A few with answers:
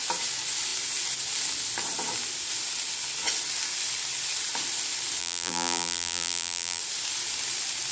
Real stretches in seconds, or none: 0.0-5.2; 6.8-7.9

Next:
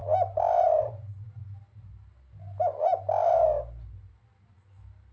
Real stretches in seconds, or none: 0.0-5.1

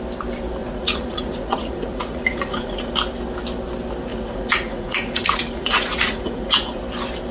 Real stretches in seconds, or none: 0.0-0.6; 2.9-4.1; 6.8-7.3

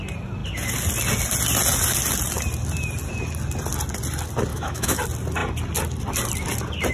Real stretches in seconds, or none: 0.0-4.5; 5.0-6.9

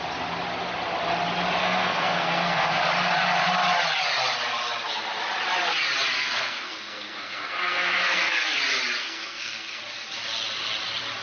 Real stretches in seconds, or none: 0.0-1.6; 2.8-6.2; 8.6-9.0; 9.8-11.2

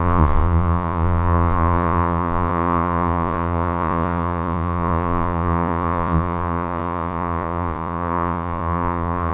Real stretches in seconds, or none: none

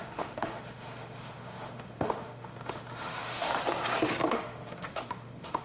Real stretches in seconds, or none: 3.5-4.3

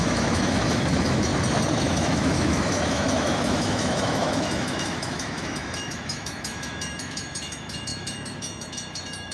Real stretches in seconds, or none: 1.3-1.8